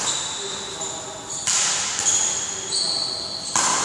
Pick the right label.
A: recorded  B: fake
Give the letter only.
A